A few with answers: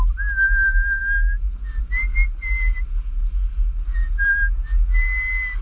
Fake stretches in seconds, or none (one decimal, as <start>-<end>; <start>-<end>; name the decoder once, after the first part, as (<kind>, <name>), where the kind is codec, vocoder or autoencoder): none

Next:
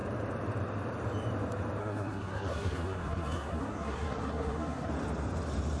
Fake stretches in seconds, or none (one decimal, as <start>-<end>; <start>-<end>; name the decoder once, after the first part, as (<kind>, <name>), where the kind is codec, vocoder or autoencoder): 1.8-4.9 (codec, SNAC)

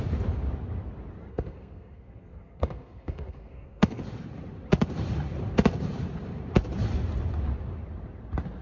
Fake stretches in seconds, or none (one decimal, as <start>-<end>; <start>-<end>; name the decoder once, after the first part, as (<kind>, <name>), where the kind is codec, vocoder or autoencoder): 1.3-4.0 (codec, SNAC)